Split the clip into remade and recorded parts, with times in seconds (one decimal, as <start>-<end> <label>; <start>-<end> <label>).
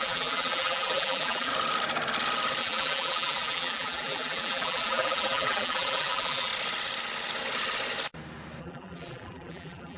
0.0-1.5 remade; 1.5-2.6 recorded; 2.6-6.5 remade; 6.5-8.6 recorded; 8.6-10.0 remade